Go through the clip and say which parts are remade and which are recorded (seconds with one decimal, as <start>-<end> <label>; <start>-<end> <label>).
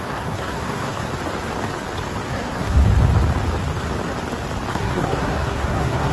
0.0-1.1 remade; 1.1-2.3 recorded; 2.3-2.8 remade; 2.8-4.7 recorded; 4.7-6.1 remade